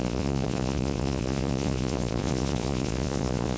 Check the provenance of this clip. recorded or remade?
remade